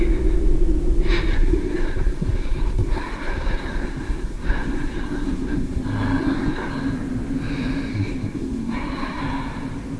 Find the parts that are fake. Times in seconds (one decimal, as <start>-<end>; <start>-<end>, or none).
1.3-5.8; 6.2-6.7; 7.9-9.2